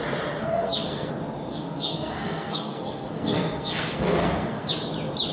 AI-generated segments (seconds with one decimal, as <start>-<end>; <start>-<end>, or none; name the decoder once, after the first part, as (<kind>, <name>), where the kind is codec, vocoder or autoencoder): 0.4-1.1 (codec, SNAC); 1.5-4.7